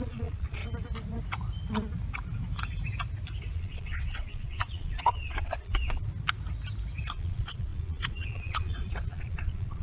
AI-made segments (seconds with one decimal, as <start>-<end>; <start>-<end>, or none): 0.0-0.6; 3.5-6.1; 7.1-9.8